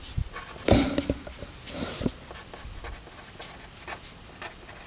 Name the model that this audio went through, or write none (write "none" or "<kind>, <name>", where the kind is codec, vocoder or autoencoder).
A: none